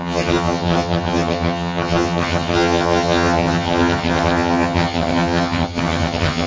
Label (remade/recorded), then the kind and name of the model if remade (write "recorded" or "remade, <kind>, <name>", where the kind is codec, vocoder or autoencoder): remade, vocoder, HiFi-GAN